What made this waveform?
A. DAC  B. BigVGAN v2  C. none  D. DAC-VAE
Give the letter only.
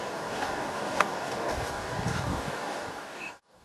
A